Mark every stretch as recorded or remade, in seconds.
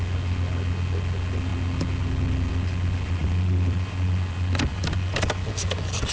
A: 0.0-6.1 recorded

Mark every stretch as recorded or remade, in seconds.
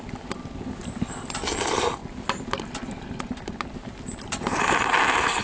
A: 0.0-5.4 recorded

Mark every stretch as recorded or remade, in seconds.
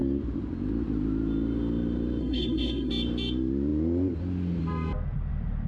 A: 0.0-2.2 recorded; 2.2-2.9 remade; 2.9-5.7 recorded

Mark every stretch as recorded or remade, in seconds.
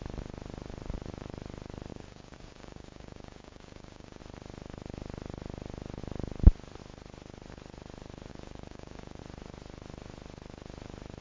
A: 0.0-1.9 recorded; 1.9-4.2 remade; 4.2-8.3 recorded; 8.3-9.2 remade; 9.2-11.2 recorded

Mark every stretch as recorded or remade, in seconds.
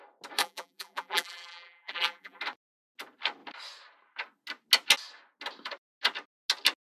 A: 0.0-0.4 recorded; 0.4-2.4 remade; 2.4-7.0 recorded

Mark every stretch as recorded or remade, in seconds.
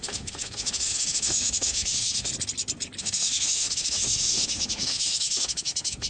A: 0.0-2.3 remade; 2.3-3.0 recorded; 3.0-6.1 remade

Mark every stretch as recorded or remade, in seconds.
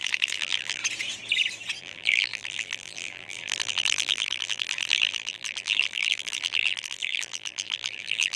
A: 0.0-0.8 remade; 0.8-1.8 recorded; 1.8-8.4 remade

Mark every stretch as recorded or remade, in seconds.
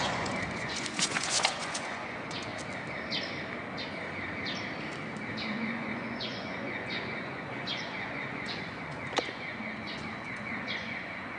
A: 0.0-2.5 remade; 2.5-5.5 recorded; 5.5-11.4 remade